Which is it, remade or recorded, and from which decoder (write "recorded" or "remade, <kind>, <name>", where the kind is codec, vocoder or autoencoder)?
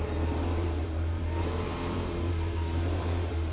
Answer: remade, vocoder, BigVGAN v2